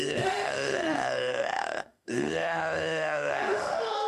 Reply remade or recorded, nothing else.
remade